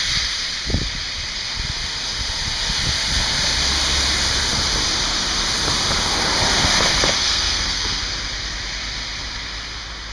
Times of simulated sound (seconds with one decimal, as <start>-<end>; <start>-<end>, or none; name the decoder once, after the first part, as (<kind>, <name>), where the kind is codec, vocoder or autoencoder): 7.2-8.0 (codec, SNAC)